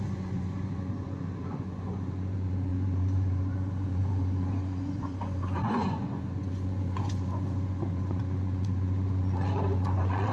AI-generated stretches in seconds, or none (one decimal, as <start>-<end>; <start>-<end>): 0.0-10.3